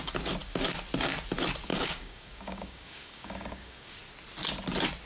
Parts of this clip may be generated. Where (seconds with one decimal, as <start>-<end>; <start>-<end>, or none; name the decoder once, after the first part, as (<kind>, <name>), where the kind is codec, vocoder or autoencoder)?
1.7-4.0 (codec, DAC)